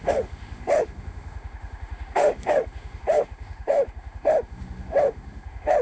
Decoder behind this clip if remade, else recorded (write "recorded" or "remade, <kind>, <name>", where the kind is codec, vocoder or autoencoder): remade, autoencoder, DAC-VAE